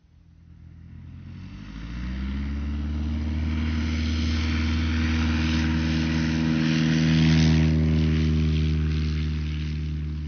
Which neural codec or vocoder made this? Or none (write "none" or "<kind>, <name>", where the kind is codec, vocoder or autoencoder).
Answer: none